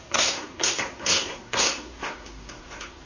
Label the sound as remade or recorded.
remade